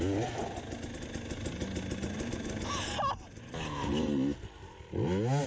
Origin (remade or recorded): recorded